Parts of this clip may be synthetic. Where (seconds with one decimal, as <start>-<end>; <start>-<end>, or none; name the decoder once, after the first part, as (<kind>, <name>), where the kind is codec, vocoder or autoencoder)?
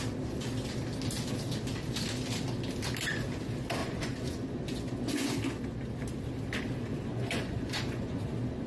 3.8-5.4 (vocoder, Vocos); 7.1-8.2